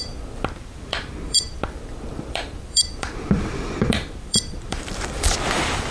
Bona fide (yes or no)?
no